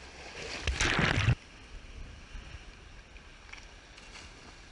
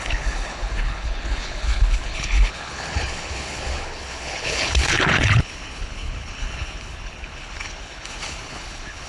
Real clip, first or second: first